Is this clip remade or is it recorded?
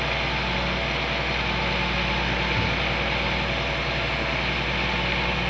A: recorded